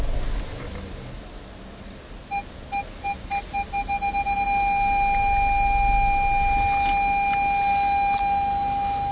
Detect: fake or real real